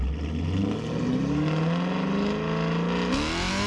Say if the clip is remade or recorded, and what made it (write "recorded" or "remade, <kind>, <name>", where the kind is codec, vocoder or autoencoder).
recorded